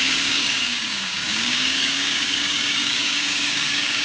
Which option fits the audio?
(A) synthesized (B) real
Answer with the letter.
A